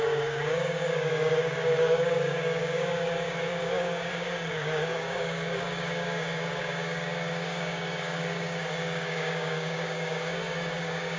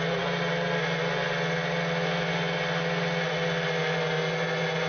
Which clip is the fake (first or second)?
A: first